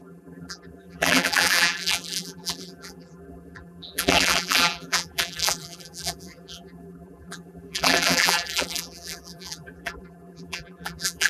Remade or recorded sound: remade